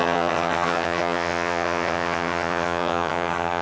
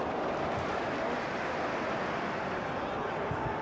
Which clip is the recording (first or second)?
second